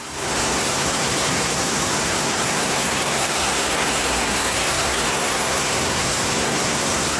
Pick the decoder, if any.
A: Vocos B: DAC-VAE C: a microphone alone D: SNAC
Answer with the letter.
D